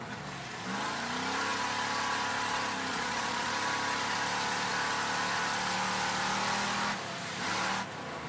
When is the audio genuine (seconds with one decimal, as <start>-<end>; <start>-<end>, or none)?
0.0-2.9; 3.5-8.3

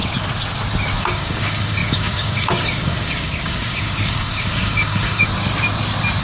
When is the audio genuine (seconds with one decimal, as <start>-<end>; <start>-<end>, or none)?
0.0-1.0; 5.3-6.2

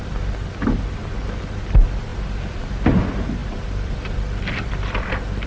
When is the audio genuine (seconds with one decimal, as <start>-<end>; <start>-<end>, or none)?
0.0-2.1; 3.0-3.4; 5.1-5.5

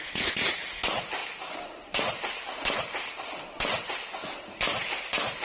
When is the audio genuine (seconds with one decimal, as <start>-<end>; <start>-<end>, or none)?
0.0-5.4

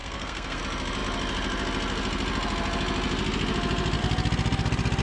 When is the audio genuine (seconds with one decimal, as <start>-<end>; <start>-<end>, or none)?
0.6-5.0

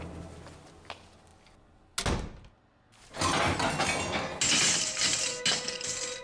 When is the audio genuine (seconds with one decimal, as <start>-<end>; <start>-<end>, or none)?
0.0-6.2

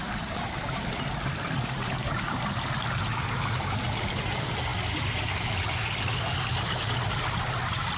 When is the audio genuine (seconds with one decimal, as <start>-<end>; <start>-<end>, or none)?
0.0-4.7; 5.4-8.0

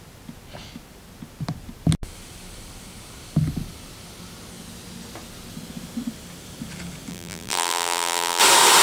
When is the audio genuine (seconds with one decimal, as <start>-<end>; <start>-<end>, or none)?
0.0-7.1; 8.4-8.8